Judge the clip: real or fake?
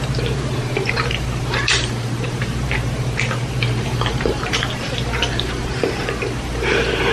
fake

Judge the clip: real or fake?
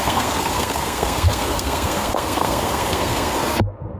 fake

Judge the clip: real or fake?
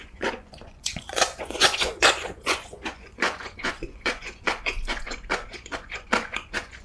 fake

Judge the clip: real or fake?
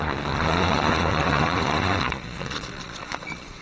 fake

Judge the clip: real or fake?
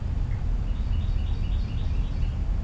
real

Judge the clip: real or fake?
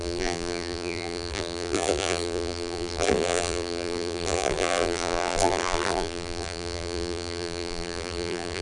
fake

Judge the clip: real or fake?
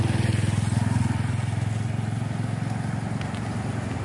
real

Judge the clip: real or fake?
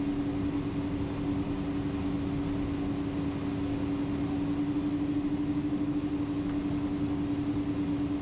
real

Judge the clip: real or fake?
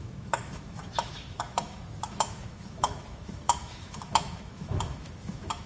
fake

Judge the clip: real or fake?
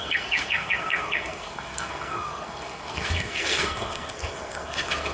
fake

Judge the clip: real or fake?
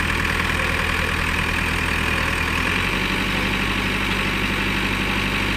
real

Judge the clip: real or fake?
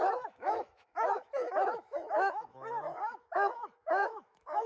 fake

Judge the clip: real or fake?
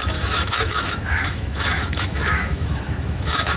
fake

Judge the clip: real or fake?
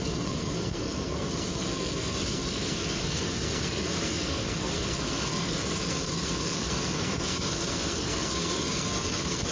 fake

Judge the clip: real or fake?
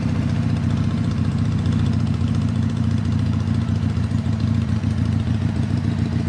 fake